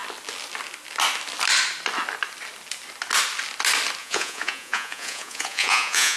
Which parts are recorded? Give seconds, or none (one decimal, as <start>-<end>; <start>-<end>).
0.0-4.0